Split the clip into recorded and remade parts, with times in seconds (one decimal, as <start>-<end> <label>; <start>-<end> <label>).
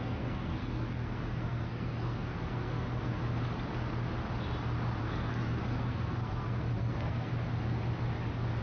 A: 0.0-3.2 remade; 3.2-5.0 recorded; 5.0-7.3 remade; 7.3-8.6 recorded